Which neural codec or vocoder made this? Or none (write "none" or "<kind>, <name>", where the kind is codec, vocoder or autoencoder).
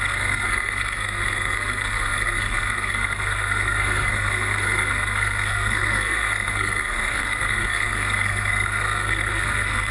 codec, SNAC